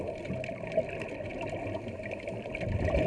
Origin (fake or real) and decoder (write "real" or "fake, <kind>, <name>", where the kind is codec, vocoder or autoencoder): real